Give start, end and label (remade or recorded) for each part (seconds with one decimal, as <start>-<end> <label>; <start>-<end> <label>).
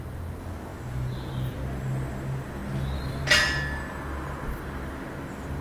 0.0-5.6 recorded